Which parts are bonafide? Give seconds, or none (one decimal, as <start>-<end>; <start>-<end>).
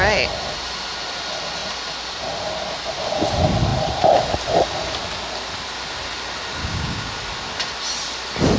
0.0-6.6; 7.1-8.6